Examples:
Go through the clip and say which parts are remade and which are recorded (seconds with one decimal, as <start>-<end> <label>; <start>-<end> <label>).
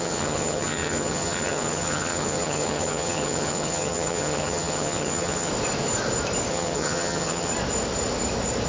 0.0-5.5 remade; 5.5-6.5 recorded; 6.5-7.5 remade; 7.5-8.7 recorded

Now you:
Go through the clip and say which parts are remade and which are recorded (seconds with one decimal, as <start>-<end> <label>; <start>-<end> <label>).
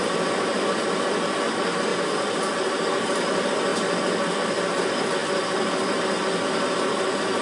0.0-1.9 remade; 1.9-3.2 recorded; 3.2-7.4 remade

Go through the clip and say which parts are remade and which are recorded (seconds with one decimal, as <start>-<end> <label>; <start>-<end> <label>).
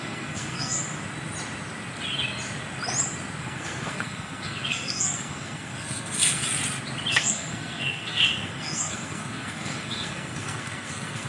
0.0-0.8 remade; 0.8-3.4 recorded; 3.4-6.4 remade; 6.4-7.1 recorded; 7.1-11.3 remade